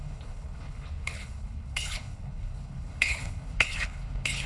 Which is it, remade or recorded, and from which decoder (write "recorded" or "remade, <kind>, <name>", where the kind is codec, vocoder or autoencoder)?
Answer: remade, codec, HILCodec